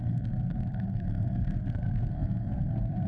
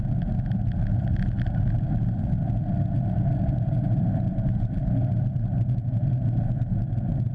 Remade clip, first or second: first